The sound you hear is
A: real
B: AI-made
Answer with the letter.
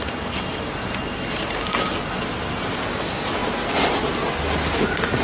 A